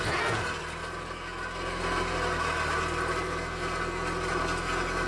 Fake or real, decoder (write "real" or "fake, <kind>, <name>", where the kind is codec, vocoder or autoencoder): real